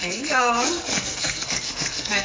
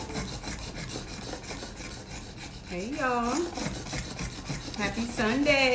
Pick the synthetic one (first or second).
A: first